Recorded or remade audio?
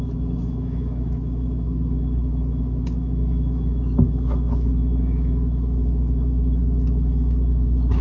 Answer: remade